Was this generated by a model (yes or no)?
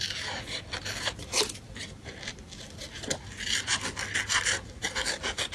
no